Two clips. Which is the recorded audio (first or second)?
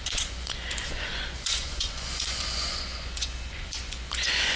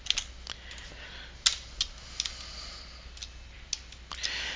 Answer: second